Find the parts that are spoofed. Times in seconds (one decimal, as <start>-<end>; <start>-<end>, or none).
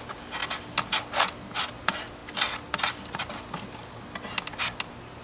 none